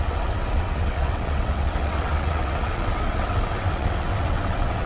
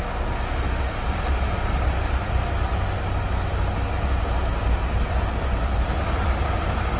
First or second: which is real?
second